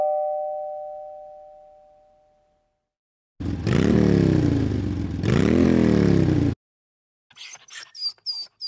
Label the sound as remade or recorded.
recorded